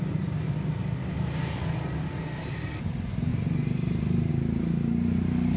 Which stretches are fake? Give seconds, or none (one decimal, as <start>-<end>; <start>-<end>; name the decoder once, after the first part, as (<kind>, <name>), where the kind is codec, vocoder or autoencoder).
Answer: none